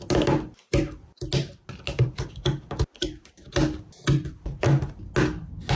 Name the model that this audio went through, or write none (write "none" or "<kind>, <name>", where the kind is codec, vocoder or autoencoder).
none